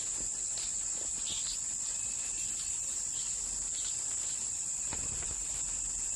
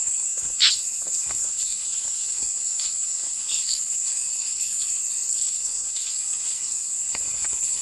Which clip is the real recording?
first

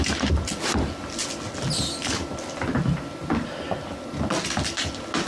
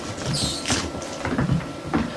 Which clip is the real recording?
first